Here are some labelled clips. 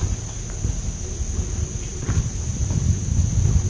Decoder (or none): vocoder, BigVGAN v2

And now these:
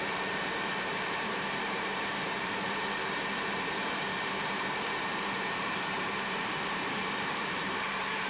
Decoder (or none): vocoder, BigVGAN v2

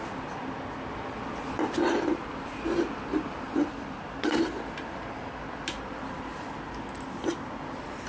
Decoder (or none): vocoder, BigVGAN v2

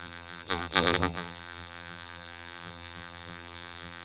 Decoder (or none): vocoder, BigVGAN v2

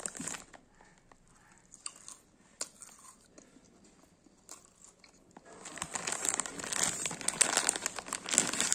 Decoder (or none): none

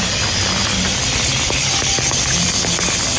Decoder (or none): vocoder, BigVGAN v2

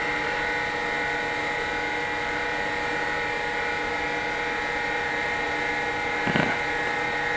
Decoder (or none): none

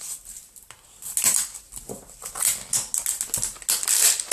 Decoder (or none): none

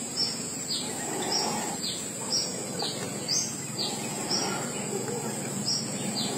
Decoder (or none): none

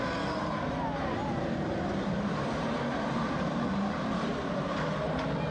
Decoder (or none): vocoder, BigVGAN v2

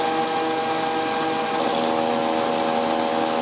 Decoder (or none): none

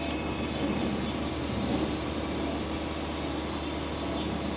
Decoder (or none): none